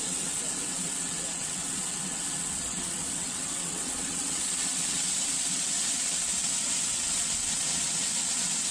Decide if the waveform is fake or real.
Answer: fake